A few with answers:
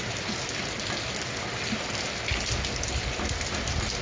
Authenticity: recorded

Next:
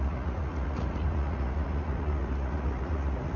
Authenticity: remade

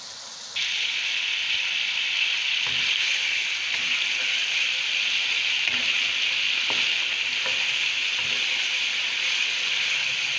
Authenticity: recorded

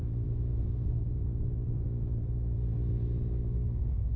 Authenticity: remade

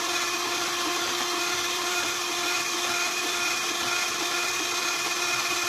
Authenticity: remade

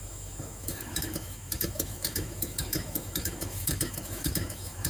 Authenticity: remade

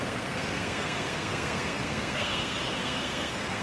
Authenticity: remade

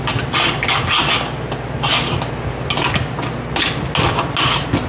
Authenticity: recorded